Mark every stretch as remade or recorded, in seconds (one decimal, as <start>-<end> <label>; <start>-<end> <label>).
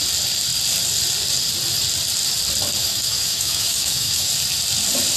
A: 0.0-2.8 recorded; 2.8-4.3 remade; 4.3-5.2 recorded